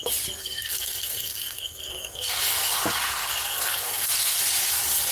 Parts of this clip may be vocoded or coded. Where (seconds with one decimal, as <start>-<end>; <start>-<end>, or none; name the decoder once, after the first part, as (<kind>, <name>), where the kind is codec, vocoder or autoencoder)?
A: 0.4-2.8 (codec, SNAC); 3.2-4.4